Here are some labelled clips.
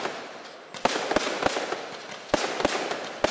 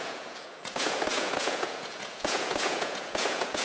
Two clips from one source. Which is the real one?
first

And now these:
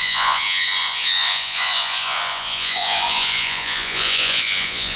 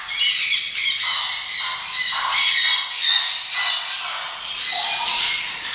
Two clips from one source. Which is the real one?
second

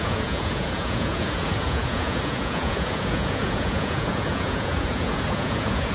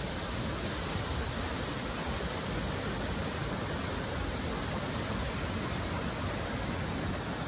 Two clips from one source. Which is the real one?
second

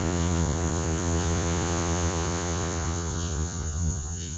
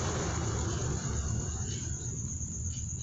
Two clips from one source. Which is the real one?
second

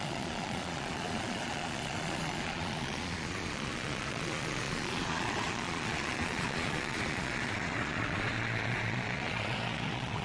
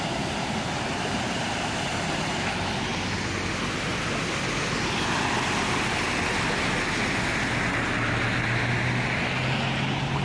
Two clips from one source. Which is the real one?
second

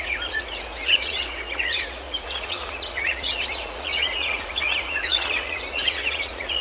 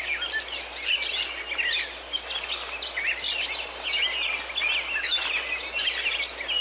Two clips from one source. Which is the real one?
second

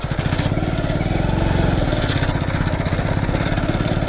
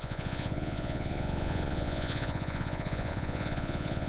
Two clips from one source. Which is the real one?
first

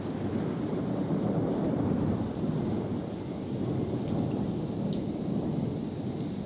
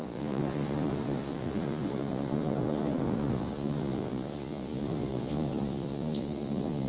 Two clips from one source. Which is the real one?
first